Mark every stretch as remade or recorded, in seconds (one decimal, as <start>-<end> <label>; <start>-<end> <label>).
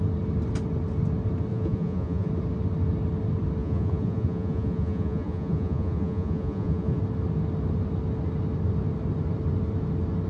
0.0-1.5 recorded; 1.5-2.3 remade; 2.3-3.6 recorded; 3.6-7.0 remade; 7.0-10.3 recorded